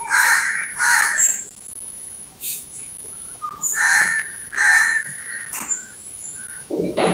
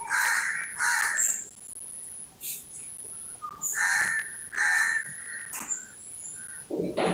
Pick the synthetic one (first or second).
first